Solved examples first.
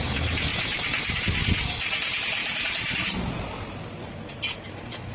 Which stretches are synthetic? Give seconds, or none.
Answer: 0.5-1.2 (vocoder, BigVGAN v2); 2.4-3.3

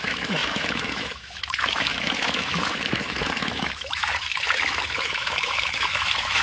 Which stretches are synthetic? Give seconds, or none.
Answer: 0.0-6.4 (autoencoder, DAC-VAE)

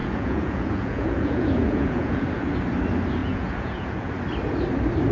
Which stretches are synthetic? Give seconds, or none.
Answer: 0.0-2.5 (vocoder, Vocos); 3.2-4.1

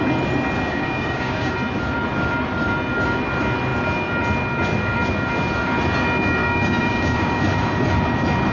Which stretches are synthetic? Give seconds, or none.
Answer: 0.7-1.5 (codec, DAC); 6.4-7.4